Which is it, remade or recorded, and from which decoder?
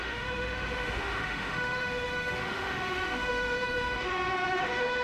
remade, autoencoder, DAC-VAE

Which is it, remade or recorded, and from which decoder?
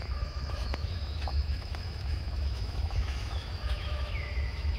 remade, autoencoder, DAC-VAE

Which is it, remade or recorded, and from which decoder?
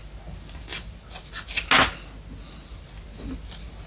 recorded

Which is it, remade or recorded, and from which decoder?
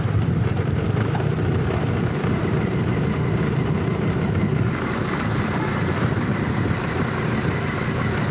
remade, vocoder, BigVGAN v2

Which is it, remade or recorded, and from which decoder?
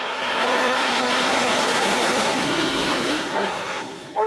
remade, codec, SNAC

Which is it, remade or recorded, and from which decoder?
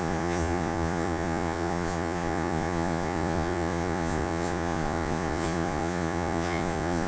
remade, vocoder, Vocos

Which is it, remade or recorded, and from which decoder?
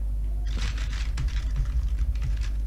remade, vocoder, BigVGAN v2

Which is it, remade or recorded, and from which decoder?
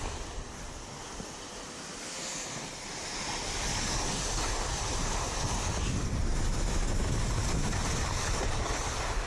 recorded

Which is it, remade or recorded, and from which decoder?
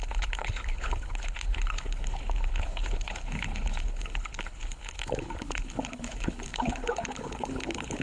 remade, codec, HILCodec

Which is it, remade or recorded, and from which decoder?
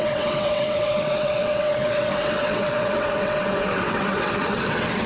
remade, vocoder, WaveNeXt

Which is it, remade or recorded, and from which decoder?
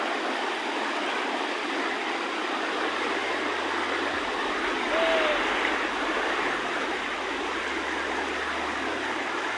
remade, vocoder, BigVGAN v2